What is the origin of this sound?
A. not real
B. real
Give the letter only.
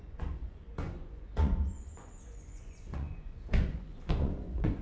A